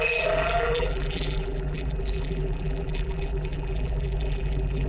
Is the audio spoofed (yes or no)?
yes